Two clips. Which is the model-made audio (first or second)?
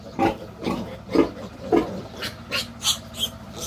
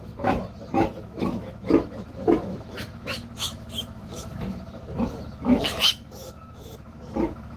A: second